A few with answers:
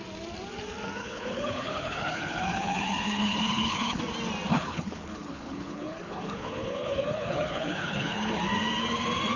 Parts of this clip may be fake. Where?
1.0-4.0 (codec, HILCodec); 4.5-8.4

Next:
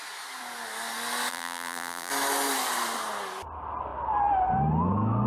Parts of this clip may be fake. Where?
1.3-2.1 (vocoder, BigVGAN v2)

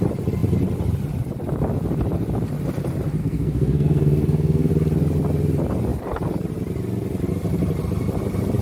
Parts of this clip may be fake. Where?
3.2-4.7 (codec, SNAC)

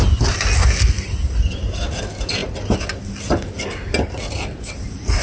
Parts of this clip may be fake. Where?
none

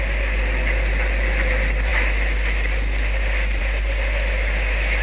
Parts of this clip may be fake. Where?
none